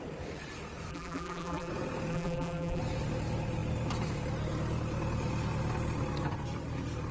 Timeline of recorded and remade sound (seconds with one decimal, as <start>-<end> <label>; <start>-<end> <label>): 0.0-0.9 recorded; 0.9-1.7 remade; 1.7-2.1 recorded; 2.1-2.8 remade; 2.8-7.1 recorded